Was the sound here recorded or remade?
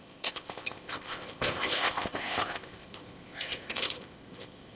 remade